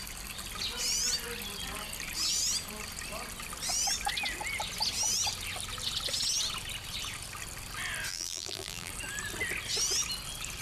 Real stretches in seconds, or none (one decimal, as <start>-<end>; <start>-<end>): 0.0-8.1; 8.9-10.6